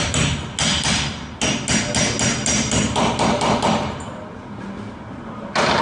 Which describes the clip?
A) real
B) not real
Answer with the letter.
A